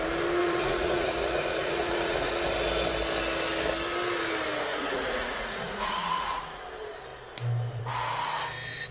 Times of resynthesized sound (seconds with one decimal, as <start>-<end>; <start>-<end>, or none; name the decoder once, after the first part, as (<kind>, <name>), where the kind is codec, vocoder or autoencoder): 0.4-2.3 (vocoder, Vocos); 4.7-6.6